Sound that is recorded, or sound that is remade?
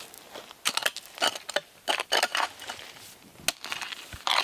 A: recorded